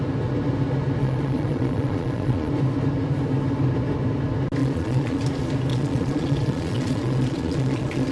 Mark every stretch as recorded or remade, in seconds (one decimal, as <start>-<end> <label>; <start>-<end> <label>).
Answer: 0.0-1.0 recorded; 1.0-2.5 remade; 2.5-4.6 recorded; 4.6-5.2 remade; 5.2-5.7 recorded; 5.7-8.1 remade